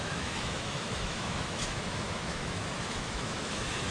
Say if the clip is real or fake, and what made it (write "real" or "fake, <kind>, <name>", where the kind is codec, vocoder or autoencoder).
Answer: fake, autoencoder, DAC-VAE